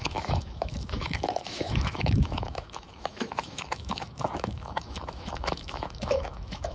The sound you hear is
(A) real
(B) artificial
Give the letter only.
B